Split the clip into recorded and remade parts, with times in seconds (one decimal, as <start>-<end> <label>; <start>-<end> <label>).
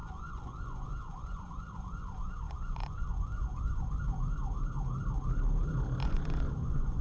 0.0-4.0 remade; 4.0-6.0 recorded; 6.0-7.0 remade